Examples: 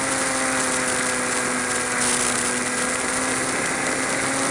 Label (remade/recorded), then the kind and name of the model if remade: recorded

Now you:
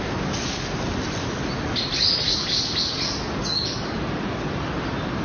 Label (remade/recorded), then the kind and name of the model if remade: recorded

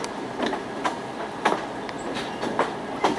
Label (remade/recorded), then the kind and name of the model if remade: recorded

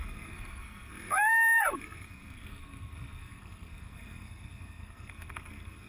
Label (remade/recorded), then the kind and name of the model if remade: remade, codec, SNAC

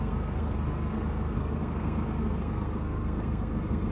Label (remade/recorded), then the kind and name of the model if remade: remade, codec, SNAC